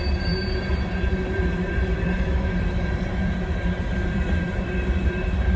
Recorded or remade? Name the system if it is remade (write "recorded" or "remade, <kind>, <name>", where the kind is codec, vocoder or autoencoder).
remade, vocoder, BigVGAN v2